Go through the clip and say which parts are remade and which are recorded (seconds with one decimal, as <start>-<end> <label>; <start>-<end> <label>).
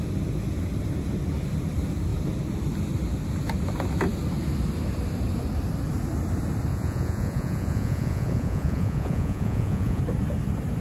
0.0-6.7 recorded; 6.7-10.0 remade; 10.0-10.8 recorded